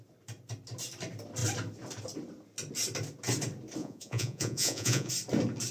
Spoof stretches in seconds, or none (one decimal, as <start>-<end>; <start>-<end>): 3.8-5.1